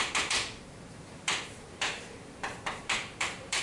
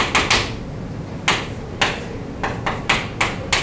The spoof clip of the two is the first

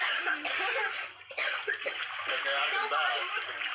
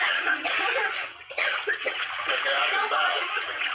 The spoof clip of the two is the second